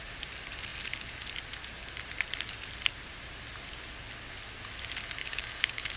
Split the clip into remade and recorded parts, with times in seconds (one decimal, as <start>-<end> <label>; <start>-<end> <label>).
0.0-5.2 recorded; 5.2-6.0 remade